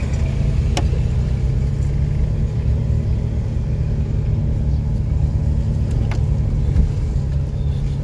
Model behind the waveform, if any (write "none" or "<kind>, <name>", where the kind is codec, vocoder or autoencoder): none